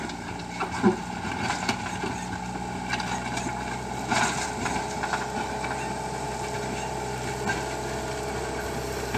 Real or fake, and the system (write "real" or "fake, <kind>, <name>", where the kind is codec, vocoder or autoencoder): real